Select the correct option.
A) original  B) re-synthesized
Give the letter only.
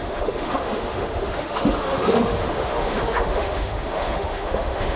B